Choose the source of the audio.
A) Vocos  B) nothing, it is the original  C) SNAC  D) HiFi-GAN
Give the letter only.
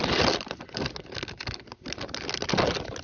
B